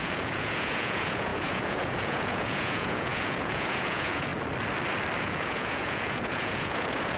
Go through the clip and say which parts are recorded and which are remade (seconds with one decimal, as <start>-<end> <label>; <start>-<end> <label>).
0.0-4.3 remade; 4.3-5.2 recorded; 5.2-7.2 remade